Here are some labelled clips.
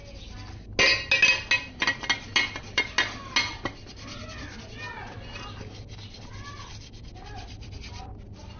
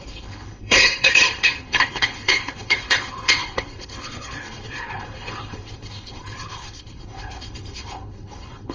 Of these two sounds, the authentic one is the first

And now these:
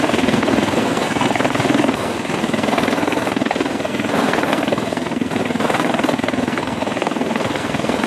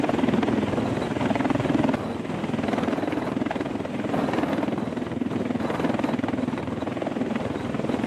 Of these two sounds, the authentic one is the second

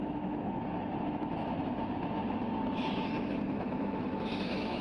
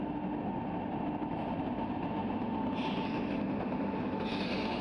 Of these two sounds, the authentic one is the second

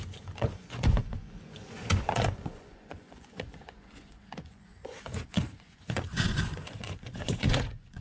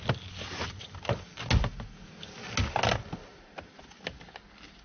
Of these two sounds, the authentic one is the second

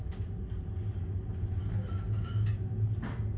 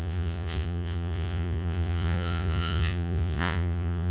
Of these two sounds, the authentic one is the first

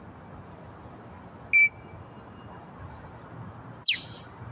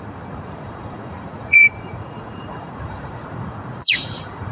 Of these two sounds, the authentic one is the first